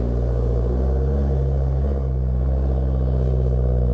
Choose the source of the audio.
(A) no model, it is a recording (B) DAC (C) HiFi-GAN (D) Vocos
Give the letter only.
A